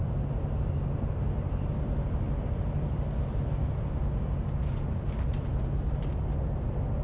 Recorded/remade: recorded